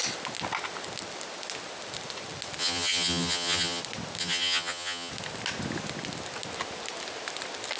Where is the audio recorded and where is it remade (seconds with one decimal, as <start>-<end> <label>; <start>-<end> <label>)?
0.0-2.6 recorded; 2.6-3.8 remade; 3.8-4.2 recorded; 4.2-5.1 remade; 5.1-7.8 recorded